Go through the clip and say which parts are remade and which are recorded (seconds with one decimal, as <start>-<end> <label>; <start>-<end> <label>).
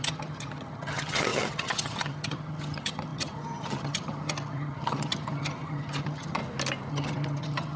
0.0-6.4 remade; 6.4-6.9 recorded; 6.9-7.8 remade